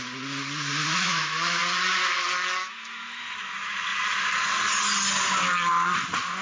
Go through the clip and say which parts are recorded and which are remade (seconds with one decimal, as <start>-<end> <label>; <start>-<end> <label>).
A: 0.0-0.8 recorded; 0.8-1.6 remade; 1.6-2.6 recorded; 2.6-3.2 remade; 3.2-6.4 recorded